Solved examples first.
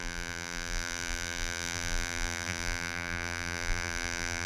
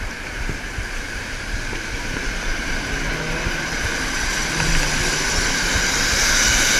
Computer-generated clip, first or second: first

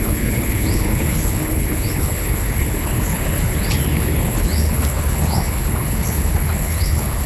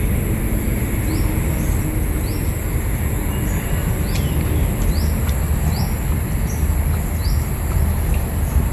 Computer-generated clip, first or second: first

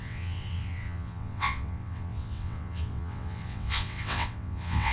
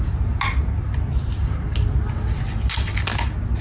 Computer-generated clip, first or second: first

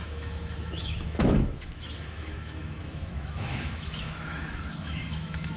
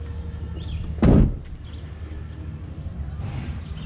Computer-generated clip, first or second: first